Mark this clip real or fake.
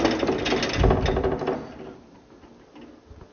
real